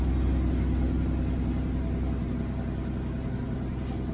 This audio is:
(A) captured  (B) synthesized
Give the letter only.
A